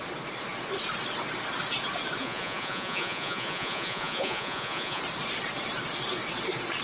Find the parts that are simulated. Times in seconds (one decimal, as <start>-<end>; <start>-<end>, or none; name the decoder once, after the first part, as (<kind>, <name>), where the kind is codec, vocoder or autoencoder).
2.2-5.0 (vocoder, Vocos)